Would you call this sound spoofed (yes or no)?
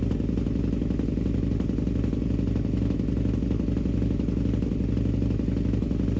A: no